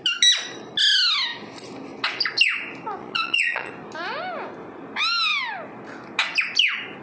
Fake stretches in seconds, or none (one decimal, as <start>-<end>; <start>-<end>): 3.0-3.7